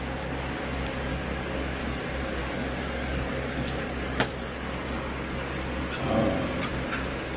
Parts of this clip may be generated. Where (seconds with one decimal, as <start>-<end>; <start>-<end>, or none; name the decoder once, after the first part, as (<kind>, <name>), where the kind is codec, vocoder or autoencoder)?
1.1-2.0 (codec, DAC); 2.4-5.8